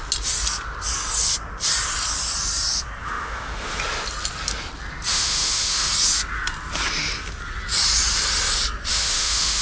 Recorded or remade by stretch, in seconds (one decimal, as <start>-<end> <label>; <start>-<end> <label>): 0.0-3.0 recorded; 3.0-3.8 remade; 3.8-5.1 recorded; 5.1-5.9 remade; 5.9-8.9 recorded; 8.9-9.6 remade